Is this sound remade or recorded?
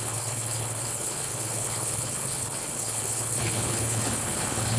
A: remade